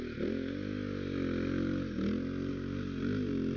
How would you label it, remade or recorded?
recorded